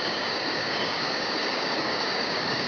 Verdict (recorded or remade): remade